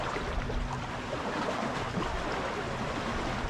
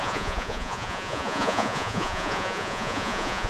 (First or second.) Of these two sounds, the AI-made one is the second